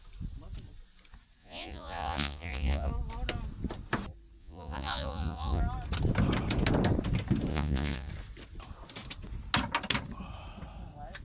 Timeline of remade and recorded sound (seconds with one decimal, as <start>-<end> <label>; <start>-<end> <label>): 0.0-1.4 recorded; 1.4-2.9 remade; 2.9-4.4 recorded; 4.4-5.6 remade; 5.6-7.5 recorded; 7.5-8.1 remade; 8.1-11.2 recorded